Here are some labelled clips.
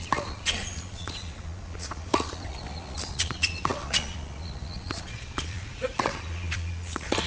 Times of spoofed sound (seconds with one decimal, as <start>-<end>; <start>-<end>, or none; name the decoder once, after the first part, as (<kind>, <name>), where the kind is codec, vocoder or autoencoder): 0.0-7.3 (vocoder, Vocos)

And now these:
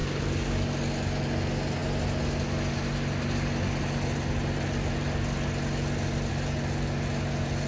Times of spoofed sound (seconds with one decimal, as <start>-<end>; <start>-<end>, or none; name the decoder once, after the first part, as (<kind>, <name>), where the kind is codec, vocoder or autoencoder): 0.0-0.7 (codec, DAC)

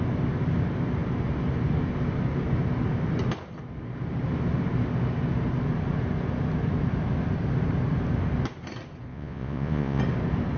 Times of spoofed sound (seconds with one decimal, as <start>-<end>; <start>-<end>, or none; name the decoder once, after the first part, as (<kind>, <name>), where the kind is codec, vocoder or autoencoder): 9.1-10.0 (vocoder, Vocos)

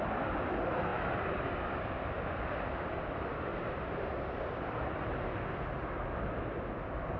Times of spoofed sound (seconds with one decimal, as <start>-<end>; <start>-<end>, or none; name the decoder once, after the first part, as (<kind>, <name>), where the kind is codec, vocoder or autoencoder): 3.5-4.0 (vocoder, BigVGAN v2)